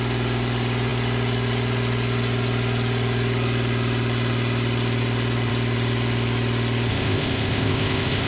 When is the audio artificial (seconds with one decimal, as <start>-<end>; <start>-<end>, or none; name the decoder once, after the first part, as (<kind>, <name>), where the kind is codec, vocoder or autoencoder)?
6.9-8.3 (codec, ZipCodec)